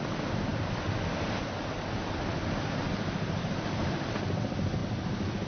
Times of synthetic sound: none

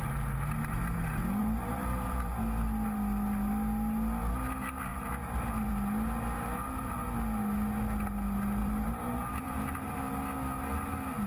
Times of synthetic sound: 1.4-2.4 (vocoder, BigVGAN v2); 8.6-10.0

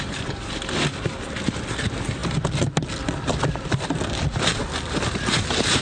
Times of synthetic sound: none

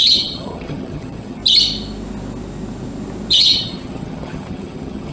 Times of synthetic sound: 0.0-1.4 (vocoder, HiFi-GAN); 3.3-5.1

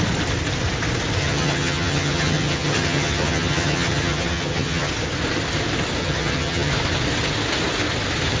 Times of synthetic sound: 1.2-4.9 (vocoder, HiFi-GAN); 6.0-6.7

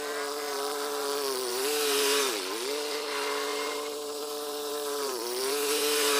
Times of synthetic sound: 1.5-2.2 (vocoder, BigVGAN v2); 3.5-6.2